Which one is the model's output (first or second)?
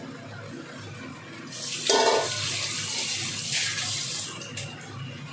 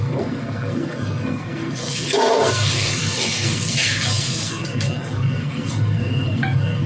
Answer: second